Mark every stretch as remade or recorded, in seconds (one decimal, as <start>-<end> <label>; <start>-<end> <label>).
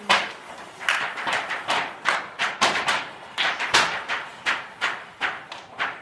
0.0-6.0 recorded